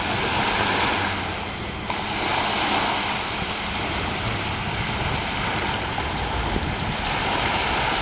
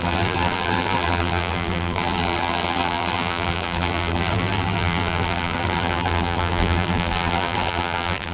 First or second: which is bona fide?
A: first